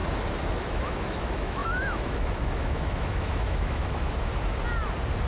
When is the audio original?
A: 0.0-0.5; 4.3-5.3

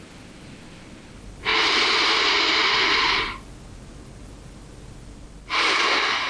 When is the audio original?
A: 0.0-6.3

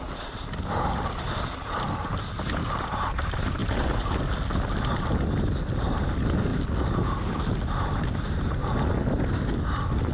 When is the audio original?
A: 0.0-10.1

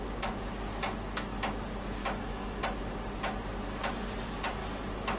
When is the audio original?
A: 0.0-2.0; 2.6-4.6

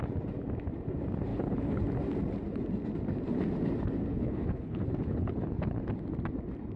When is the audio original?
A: 0.0-1.3; 1.8-4.1; 5.8-6.8

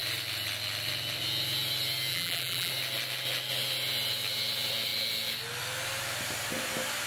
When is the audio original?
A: 0.0-2.1; 2.7-7.1